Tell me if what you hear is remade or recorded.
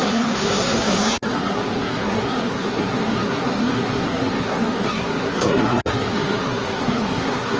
remade